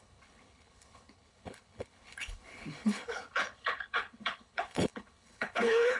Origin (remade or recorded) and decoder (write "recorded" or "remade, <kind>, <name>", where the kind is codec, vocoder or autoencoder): remade, codec, HILCodec